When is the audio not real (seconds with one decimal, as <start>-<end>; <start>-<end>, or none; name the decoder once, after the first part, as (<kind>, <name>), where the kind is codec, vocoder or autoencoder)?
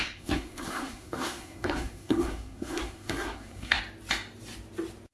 0.0-3.8 (codec, SNAC)